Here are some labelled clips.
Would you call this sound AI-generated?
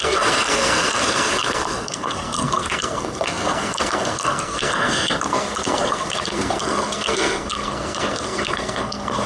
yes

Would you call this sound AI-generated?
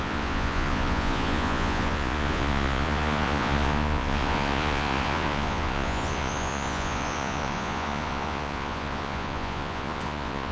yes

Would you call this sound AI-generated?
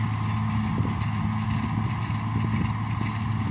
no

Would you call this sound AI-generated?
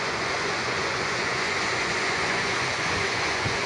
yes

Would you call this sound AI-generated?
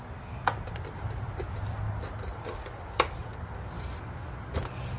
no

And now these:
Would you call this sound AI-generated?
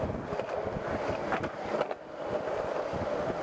no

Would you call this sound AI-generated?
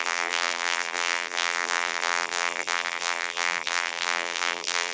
yes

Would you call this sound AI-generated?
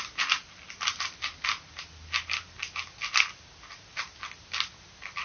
no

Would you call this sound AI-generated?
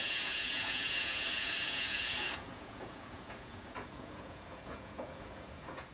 yes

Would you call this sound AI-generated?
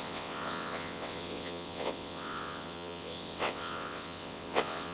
yes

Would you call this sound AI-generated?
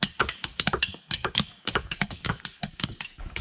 yes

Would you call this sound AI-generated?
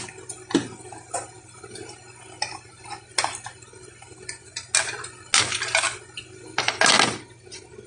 no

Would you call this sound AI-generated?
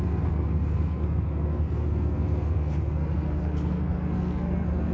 yes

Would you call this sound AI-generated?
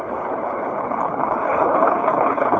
yes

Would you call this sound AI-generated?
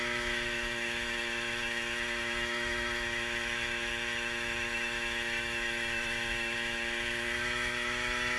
yes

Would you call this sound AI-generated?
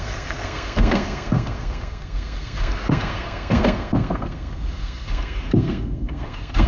yes